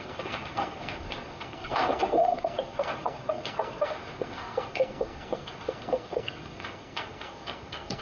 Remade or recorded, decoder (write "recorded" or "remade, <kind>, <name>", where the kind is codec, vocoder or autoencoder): remade, codec, SNAC